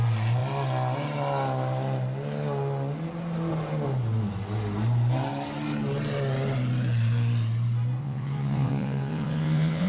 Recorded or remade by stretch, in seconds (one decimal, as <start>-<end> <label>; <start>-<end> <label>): 0.0-8.0 recorded; 8.0-9.9 remade